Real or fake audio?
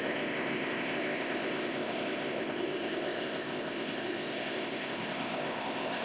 fake